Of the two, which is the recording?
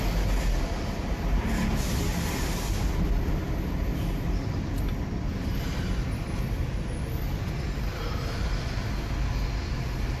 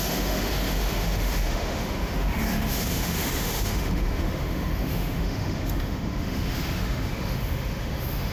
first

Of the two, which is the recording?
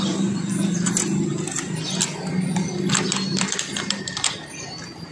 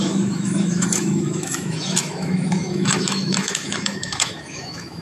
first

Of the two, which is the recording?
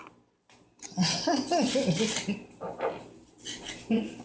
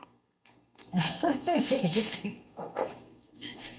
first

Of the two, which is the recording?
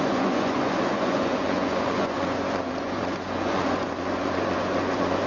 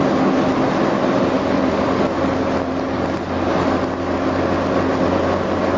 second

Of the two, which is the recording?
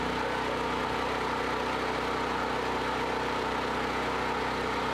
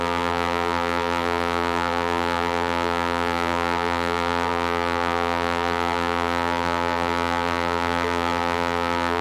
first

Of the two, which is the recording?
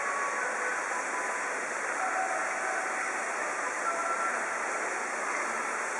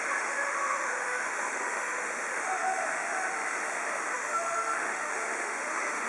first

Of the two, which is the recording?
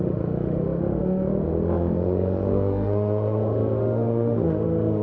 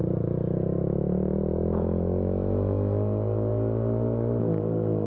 second